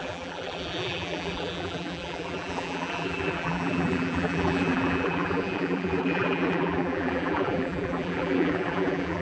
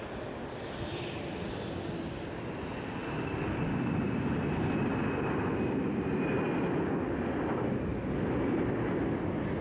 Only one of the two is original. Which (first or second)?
second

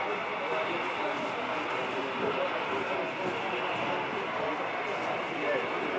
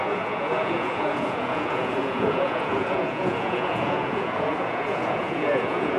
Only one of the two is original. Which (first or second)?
first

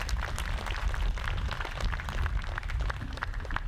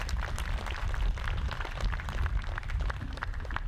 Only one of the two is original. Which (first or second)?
first